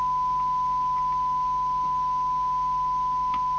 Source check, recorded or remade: recorded